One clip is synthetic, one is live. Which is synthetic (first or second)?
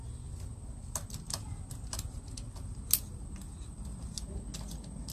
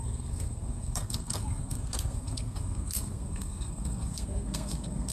second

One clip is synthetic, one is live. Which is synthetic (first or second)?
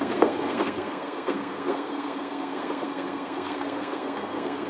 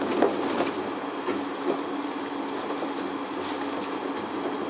first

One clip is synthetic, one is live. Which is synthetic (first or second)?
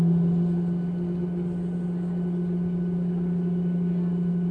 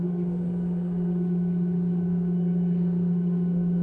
second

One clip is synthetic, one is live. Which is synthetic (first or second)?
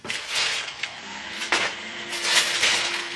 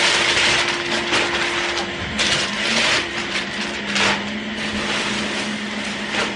first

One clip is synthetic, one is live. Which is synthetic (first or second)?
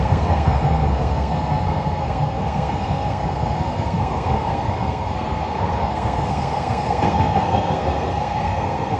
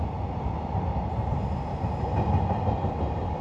first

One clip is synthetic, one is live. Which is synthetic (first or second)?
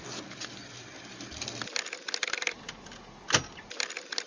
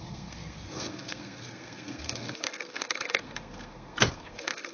second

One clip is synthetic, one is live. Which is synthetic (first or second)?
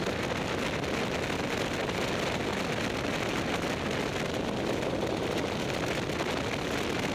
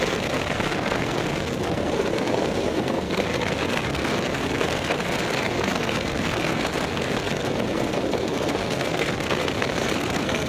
second